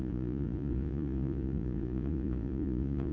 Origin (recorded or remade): remade